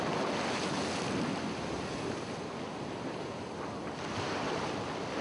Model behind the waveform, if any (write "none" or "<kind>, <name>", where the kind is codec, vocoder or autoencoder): none